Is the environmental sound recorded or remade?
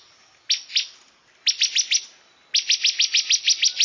recorded